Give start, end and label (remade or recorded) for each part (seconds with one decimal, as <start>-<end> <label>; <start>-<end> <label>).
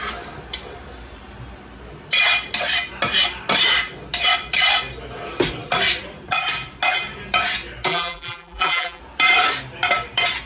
0.0-7.9 recorded; 7.9-9.0 remade; 9.0-10.5 recorded